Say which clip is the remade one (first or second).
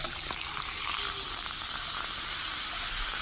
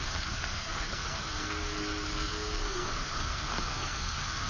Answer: second